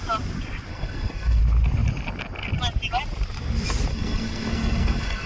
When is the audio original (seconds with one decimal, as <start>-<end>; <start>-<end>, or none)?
0.0-0.7; 1.4-3.9